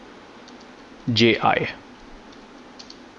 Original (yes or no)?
yes